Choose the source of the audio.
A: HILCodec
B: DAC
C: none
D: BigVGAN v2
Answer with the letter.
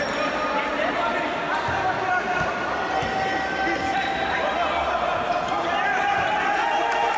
C